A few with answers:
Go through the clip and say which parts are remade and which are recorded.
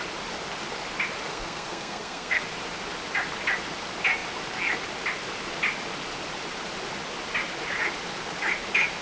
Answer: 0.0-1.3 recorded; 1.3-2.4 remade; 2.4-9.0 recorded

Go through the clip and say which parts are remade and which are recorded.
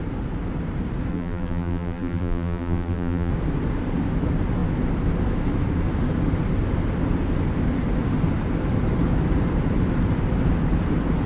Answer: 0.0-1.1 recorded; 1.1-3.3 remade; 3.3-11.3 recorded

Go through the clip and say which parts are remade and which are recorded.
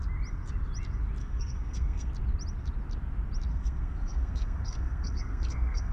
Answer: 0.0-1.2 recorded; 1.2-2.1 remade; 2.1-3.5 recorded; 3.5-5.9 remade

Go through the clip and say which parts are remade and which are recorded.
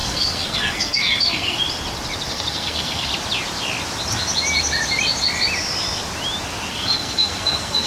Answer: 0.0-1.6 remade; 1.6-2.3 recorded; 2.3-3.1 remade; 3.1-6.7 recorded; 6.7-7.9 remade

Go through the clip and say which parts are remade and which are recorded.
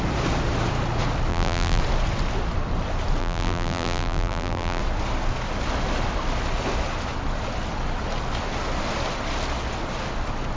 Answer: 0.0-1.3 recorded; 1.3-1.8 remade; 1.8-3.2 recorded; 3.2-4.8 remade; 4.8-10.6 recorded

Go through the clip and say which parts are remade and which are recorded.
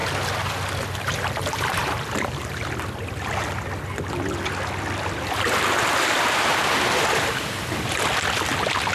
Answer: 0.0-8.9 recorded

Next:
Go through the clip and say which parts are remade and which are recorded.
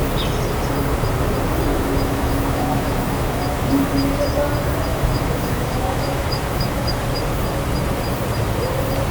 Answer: 0.0-1.7 recorded; 1.7-3.9 remade; 3.9-4.9 recorded; 4.9-6.9 remade; 6.9-9.1 recorded